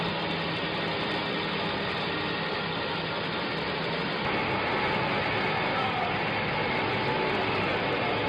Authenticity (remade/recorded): recorded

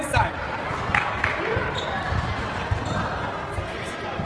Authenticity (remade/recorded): recorded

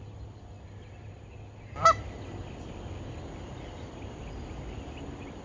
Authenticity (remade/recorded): recorded